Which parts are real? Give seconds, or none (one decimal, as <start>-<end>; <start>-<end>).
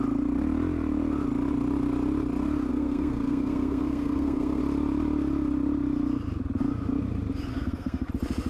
0.0-2.7; 4.6-7.5; 8.1-8.5